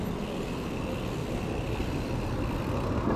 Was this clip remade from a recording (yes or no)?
no